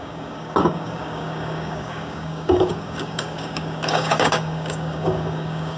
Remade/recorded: remade